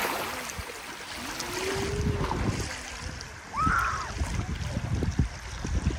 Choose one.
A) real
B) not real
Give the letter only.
A